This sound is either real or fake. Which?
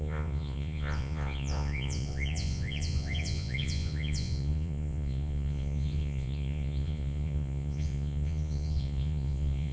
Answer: fake